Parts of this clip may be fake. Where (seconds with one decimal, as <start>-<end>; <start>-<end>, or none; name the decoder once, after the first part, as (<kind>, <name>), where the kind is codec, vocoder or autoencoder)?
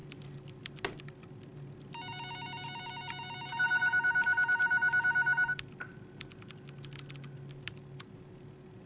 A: none